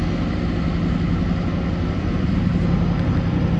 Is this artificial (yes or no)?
no